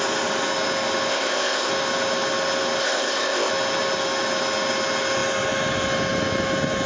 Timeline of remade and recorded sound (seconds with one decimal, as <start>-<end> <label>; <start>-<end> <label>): 0.0-1.1 recorded; 1.1-1.7 remade; 1.7-2.8 recorded; 2.8-3.5 remade; 3.5-6.9 recorded

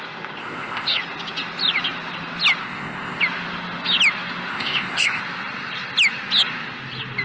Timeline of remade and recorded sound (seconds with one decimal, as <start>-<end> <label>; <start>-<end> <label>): 0.0-0.4 recorded; 0.4-1.0 remade; 1.0-2.6 recorded; 2.6-3.2 remade; 3.2-4.5 recorded; 4.5-5.2 remade; 5.2-7.2 recorded

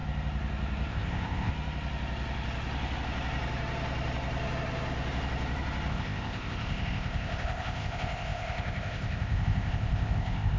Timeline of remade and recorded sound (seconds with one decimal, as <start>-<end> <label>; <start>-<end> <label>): 0.0-0.9 recorded; 0.9-1.5 remade; 1.5-5.9 recorded; 5.9-10.6 remade

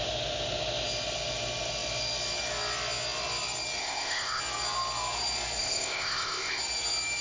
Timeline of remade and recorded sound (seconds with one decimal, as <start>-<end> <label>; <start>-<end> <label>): 0.0-3.8 recorded; 3.8-4.4 remade; 4.4-5.6 recorded; 5.6-6.6 remade; 6.6-7.2 recorded

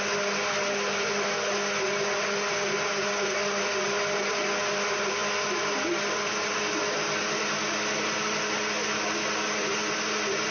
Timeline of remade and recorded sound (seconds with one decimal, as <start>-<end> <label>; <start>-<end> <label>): 0.0-10.5 recorded

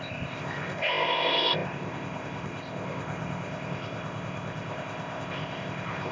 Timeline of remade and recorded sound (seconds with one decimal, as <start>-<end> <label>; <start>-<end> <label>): 0.0-6.1 remade